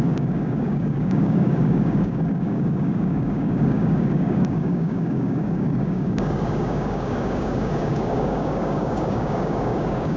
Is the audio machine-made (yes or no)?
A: yes